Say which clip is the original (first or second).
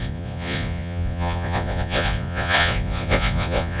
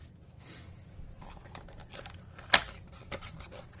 second